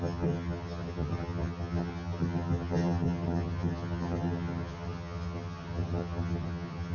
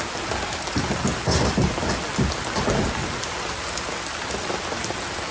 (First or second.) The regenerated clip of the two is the first